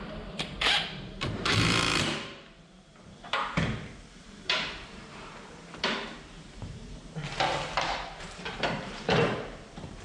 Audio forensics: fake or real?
fake